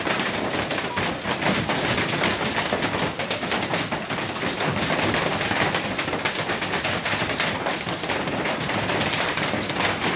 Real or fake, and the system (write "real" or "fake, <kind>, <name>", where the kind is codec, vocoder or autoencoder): real